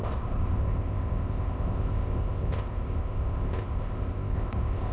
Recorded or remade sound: remade